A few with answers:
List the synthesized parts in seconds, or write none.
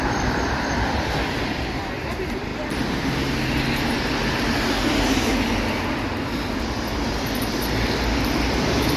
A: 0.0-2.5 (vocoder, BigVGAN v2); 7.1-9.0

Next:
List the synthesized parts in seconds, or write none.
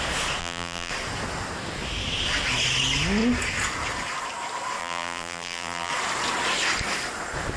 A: 0.4-0.9 (vocoder, BigVGAN v2); 4.8-5.9